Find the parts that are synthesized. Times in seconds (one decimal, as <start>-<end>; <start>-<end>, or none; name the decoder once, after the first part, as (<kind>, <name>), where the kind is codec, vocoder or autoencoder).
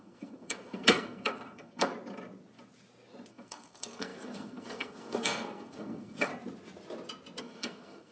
0.0-1.9 (codec, SNAC); 3.3-6.3; 7.4-8.1